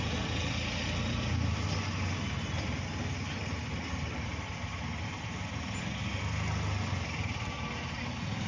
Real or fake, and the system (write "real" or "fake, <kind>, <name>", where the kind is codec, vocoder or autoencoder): real